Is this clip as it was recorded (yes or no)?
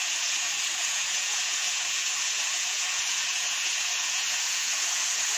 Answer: no